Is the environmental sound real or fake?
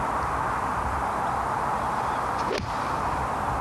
real